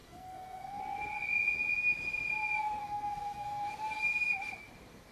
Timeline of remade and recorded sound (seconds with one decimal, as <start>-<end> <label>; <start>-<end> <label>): 0.0-0.8 remade; 0.8-2.8 recorded; 2.8-3.7 remade; 3.7-5.1 recorded